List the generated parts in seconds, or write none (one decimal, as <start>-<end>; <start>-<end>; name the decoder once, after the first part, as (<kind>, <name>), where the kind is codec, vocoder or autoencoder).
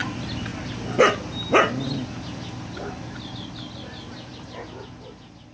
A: 0.0-0.5 (vocoder, BigVGAN v2); 3.8-4.3